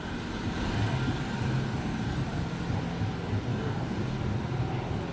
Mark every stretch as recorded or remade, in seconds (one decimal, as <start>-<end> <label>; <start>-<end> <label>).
0.0-3.5 recorded; 3.5-4.2 remade; 4.2-5.1 recorded